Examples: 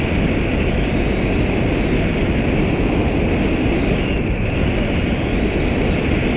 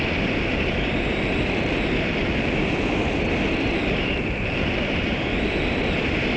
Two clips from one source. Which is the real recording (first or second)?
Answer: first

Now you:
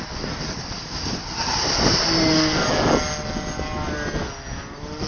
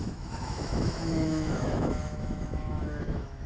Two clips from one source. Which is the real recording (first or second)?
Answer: first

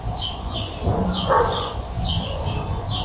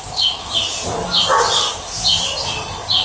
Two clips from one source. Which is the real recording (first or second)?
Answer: second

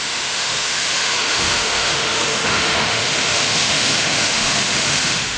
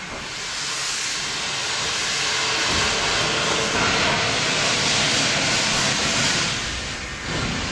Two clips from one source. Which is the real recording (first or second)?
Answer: second